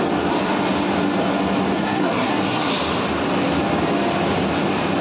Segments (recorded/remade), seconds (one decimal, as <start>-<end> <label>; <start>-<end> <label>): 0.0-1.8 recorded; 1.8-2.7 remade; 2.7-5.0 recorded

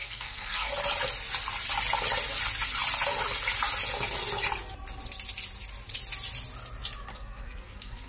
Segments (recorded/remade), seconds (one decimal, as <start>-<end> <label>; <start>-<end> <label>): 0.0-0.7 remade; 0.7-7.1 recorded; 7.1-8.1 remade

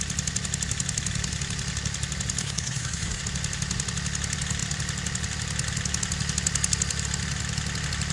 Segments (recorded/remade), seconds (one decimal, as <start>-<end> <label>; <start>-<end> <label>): 0.0-2.4 recorded; 2.4-3.2 remade; 3.2-8.1 recorded